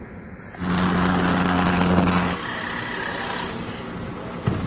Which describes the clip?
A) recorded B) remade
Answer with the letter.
A